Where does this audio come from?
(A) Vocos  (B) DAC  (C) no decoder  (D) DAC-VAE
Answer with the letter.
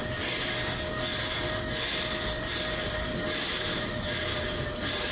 C